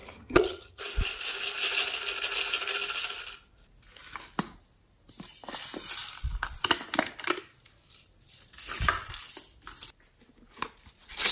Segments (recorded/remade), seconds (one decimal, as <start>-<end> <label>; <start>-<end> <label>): 0.0-0.8 remade; 0.8-11.3 recorded